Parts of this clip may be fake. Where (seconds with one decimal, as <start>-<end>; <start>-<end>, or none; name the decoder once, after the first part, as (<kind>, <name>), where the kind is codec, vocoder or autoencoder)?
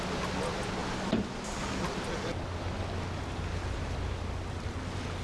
none